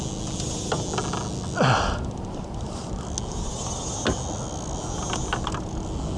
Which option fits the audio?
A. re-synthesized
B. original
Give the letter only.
B